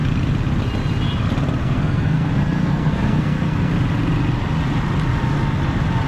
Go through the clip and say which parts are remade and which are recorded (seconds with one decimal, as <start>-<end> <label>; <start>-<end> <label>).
0.0-1.6 recorded; 1.6-3.7 remade; 3.7-6.1 recorded